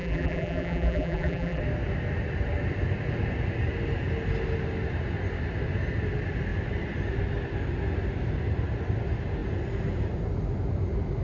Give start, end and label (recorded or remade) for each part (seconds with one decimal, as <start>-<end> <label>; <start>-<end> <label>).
0.0-1.6 remade; 1.6-11.2 recorded